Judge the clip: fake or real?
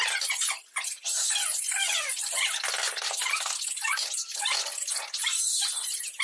real